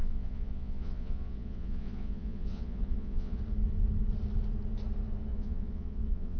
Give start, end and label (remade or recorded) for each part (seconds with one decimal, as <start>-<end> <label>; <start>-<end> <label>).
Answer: 0.0-3.4 remade; 3.4-5.3 recorded; 5.3-6.4 remade